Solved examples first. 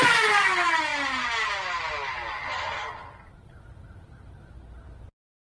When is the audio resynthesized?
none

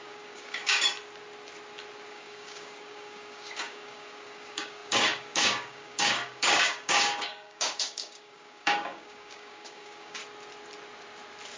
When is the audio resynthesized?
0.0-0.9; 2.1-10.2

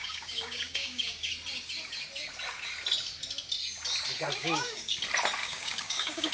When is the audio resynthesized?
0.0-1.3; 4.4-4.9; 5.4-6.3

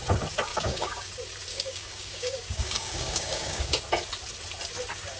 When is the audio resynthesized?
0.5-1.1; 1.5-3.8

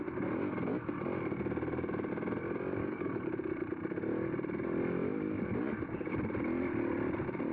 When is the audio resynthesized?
2.8-3.3

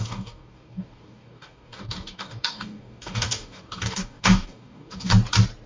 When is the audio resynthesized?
0.0-5.1

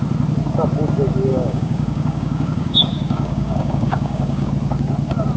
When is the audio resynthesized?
1.3-4.5

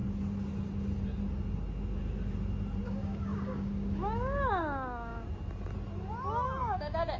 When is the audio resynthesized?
2.8-5.1; 6.6-7.2